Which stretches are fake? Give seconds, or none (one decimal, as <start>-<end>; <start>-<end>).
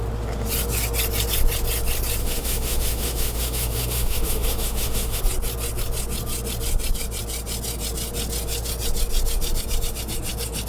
2.2-5.2